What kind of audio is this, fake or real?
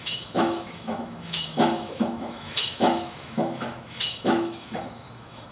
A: fake